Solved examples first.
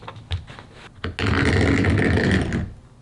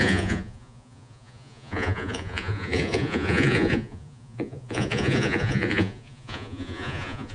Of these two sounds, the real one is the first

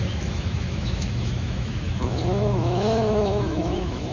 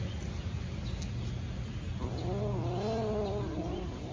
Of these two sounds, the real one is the second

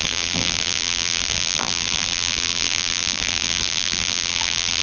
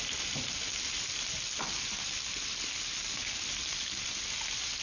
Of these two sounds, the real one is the second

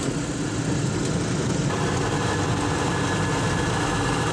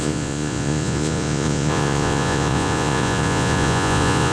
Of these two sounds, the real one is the first